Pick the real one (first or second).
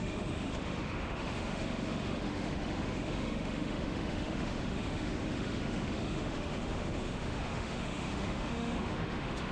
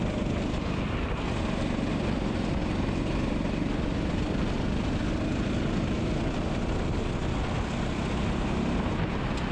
second